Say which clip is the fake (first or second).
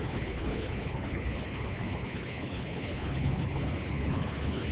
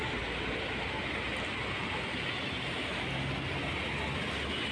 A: first